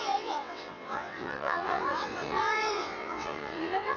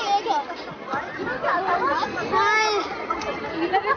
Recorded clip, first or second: second